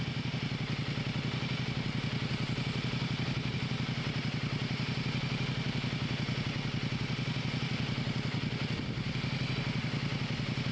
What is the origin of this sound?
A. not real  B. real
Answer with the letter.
B